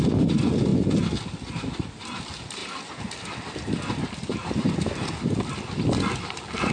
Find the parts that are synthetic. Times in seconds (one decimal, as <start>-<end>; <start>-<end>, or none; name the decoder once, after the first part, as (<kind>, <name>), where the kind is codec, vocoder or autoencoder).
none

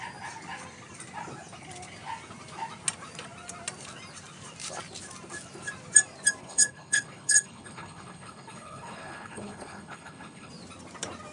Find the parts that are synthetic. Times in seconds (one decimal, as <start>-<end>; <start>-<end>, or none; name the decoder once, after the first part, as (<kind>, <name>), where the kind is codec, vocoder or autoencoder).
6.4-10.5 (codec, HILCodec)

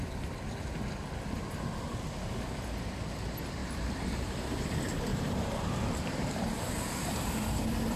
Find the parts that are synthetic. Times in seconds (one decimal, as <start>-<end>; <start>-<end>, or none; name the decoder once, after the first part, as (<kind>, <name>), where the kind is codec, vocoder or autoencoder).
3.6-4.4 (vocoder, BigVGAN v2); 5.1-7.6

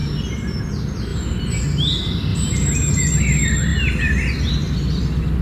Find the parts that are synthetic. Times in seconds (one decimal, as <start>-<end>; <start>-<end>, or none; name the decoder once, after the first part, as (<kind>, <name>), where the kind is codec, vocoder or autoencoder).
0.0-0.6 (vocoder, BigVGAN v2); 1.1-1.6; 2.3-3.0; 3.7-4.5

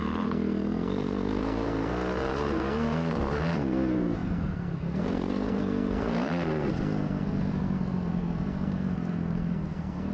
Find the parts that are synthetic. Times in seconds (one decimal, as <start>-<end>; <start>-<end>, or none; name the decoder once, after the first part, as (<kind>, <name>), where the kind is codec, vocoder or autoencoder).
0.0-10.1 (codec, SNAC)

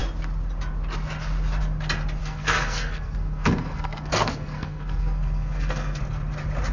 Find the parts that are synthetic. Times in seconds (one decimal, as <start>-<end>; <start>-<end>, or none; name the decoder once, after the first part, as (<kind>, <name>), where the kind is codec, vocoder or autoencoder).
2.2-6.0 (codec, SNAC)